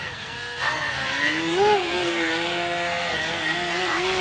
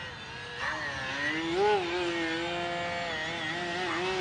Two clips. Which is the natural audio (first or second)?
second